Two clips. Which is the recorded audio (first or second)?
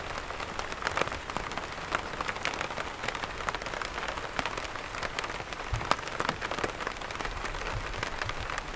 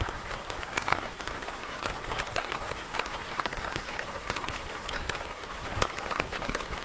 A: first